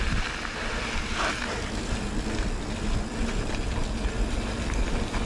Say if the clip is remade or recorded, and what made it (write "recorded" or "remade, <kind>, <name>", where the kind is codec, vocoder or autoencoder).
recorded